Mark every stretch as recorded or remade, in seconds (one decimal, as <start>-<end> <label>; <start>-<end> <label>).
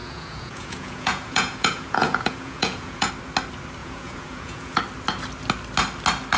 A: 0.0-3.1 remade; 3.1-3.8 recorded; 3.8-4.8 remade; 4.8-6.4 recorded